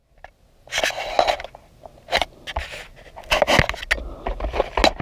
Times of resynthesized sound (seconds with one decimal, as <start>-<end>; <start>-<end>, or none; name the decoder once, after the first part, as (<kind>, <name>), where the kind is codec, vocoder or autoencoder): none